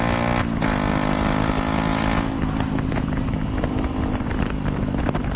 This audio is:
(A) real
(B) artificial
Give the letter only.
A